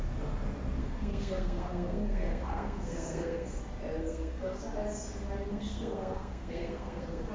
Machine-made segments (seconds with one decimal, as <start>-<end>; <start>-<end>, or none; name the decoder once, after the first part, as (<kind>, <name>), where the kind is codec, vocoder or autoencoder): 0.8-3.6 (codec, SNAC); 4.0-4.6; 5.5-7.3